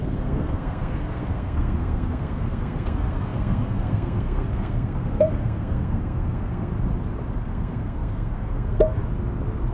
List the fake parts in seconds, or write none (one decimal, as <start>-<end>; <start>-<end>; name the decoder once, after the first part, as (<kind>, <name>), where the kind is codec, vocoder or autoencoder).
0.0-6.7 (codec, SNAC); 7.4-9.0